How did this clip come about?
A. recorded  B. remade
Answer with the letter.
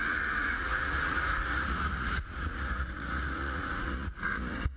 B